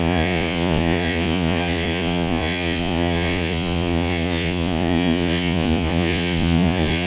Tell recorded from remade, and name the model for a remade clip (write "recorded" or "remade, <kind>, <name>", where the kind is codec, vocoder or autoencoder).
remade, vocoder, Vocos